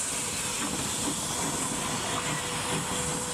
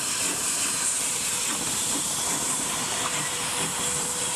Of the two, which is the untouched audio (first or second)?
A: first